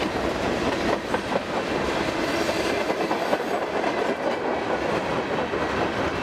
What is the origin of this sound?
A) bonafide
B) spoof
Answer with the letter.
A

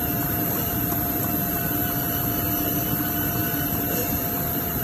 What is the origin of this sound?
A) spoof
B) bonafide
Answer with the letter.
A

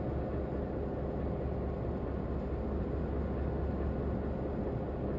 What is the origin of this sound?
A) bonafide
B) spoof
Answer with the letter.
A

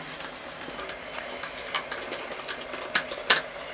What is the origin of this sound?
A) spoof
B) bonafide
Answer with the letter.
B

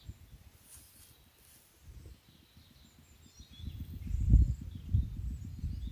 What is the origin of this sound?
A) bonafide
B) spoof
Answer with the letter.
A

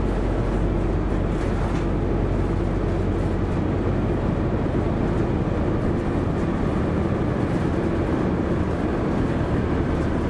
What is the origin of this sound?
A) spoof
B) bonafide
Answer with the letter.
B